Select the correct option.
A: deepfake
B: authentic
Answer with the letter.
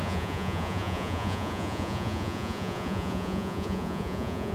A